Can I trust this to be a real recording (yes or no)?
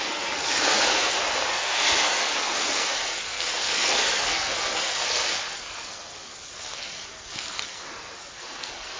no